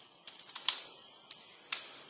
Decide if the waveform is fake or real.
real